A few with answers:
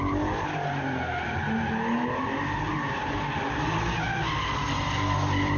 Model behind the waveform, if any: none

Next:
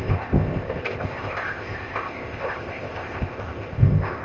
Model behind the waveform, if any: codec, ZipCodec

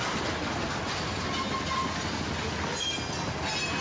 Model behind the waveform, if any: none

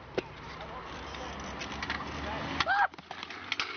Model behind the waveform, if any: none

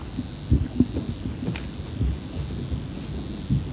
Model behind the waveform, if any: none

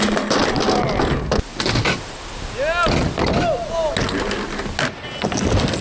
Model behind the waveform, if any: none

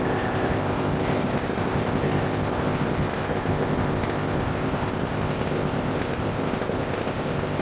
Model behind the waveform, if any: codec, ZipCodec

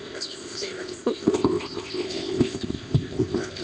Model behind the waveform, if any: codec, ZipCodec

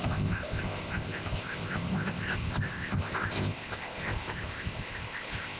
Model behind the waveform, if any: codec, ZipCodec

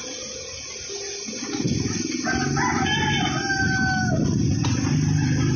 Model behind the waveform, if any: none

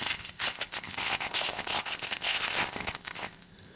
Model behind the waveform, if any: codec, ZipCodec